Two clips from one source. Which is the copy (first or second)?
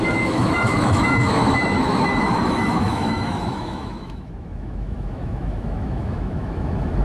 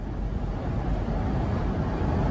first